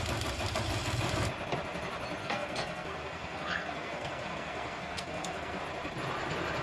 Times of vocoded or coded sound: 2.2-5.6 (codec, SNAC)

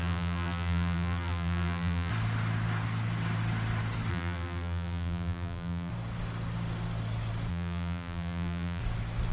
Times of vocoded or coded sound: 0.0-2.1 (vocoder, BigVGAN v2); 4.1-5.9; 7.5-8.8

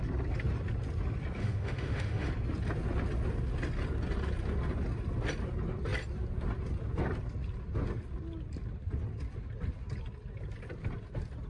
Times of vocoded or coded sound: 1.4-2.3 (autoencoder, DAC-VAE)

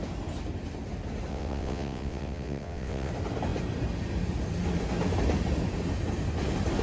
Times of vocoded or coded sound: 1.3-3.1 (vocoder, WaveNeXt)

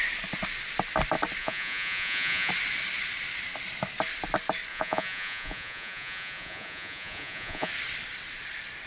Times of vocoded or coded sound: 1.4-2.5 (vocoder, Vocos); 4.7-7.7

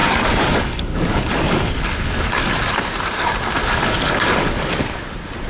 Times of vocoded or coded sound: 0.0-2.5 (codec, DAC); 3.6-4.7